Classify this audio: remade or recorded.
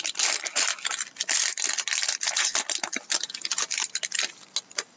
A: recorded